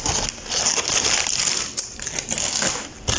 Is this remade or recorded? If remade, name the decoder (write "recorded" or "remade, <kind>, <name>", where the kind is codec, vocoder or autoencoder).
recorded